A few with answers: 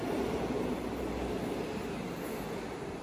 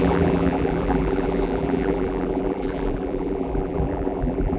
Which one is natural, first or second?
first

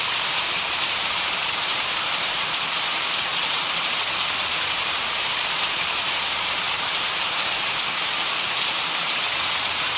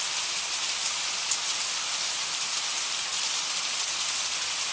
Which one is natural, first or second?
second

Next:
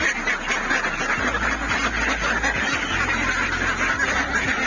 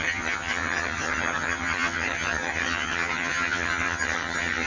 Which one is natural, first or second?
first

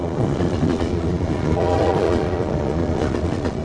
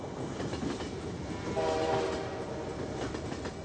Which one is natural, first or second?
second